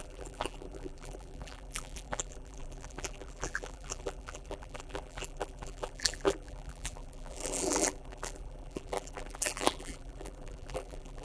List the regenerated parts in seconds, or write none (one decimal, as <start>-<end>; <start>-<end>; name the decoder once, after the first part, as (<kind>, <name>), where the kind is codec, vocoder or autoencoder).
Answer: 0.0-11.2 (vocoder, BigVGAN v2)